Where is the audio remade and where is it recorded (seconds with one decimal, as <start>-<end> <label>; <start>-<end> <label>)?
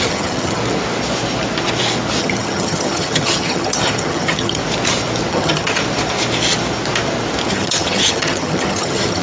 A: 0.0-0.6 remade; 0.6-2.2 recorded; 2.2-4.6 remade; 4.6-5.3 recorded; 5.3-5.8 remade; 5.8-7.5 recorded; 7.5-9.2 remade